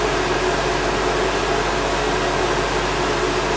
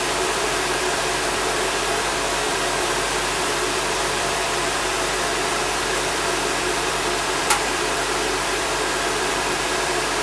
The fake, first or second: second